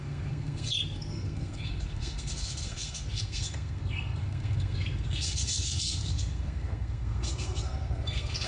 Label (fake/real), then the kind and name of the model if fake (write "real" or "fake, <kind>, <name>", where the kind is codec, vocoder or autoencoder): fake, codec, SNAC